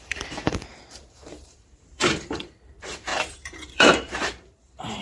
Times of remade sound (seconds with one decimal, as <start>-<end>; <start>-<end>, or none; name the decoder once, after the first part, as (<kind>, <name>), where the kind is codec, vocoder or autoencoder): 0.0-5.0 (vocoder, BigVGAN v2)